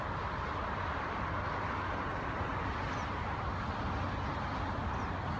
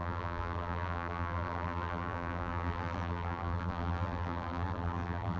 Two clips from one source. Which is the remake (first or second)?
second